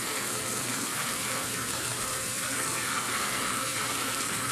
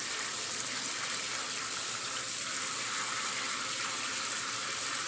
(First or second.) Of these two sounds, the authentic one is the second